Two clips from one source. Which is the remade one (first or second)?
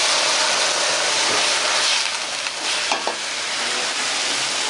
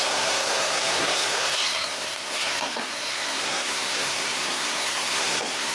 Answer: second